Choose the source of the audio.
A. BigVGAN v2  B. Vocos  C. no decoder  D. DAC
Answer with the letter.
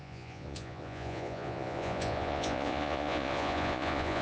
B